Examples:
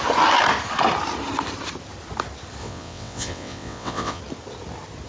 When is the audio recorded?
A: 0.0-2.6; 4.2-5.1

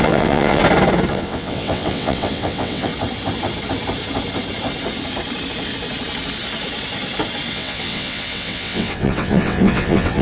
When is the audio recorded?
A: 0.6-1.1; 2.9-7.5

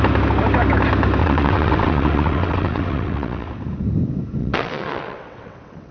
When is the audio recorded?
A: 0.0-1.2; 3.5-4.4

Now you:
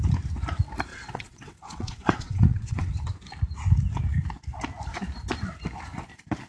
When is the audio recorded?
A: 0.0-0.9; 2.9-6.5